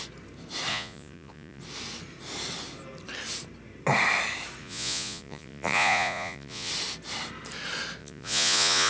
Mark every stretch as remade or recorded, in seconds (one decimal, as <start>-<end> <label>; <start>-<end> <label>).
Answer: 0.0-0.7 recorded; 0.7-1.6 remade; 1.6-4.6 recorded; 4.6-6.7 remade; 6.7-8.0 recorded; 8.0-8.9 remade